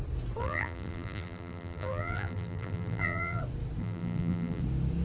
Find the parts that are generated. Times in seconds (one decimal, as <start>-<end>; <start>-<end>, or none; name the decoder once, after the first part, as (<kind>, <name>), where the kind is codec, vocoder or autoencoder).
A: 0.4-3.4 (vocoder, BigVGAN v2); 3.8-4.6

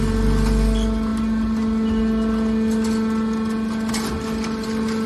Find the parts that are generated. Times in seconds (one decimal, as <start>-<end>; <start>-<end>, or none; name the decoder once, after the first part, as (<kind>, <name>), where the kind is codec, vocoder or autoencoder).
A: none

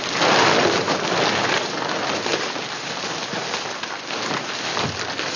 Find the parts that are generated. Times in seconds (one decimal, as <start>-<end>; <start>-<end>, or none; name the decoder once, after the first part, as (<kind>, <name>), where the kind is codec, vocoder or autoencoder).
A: none

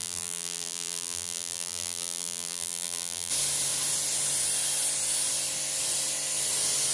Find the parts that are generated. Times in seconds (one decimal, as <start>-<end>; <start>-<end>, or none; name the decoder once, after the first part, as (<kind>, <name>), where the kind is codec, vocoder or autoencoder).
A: 0.0-3.3 (vocoder, BigVGAN v2)

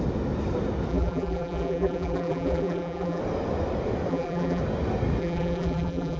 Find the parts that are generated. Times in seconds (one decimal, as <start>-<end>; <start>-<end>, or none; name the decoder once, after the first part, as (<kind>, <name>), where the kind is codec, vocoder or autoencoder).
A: 0.9-3.2 (vocoder, BigVGAN v2); 4.1-4.6; 5.2-6.2

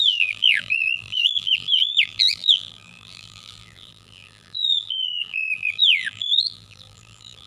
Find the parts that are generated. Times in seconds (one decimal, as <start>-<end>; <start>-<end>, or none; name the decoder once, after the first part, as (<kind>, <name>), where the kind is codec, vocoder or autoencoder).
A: 0.0-7.5 (vocoder, BigVGAN v2)

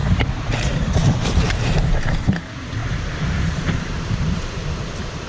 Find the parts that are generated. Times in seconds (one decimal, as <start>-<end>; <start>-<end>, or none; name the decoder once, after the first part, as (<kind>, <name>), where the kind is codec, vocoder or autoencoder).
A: 0.0-2.4 (vocoder, BigVGAN v2); 2.8-3.9